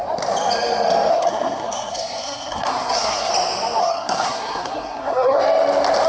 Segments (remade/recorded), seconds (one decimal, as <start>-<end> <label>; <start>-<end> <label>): 0.0-1.1 recorded; 1.1-3.3 remade; 3.3-3.8 recorded; 3.8-5.4 remade; 5.4-6.1 recorded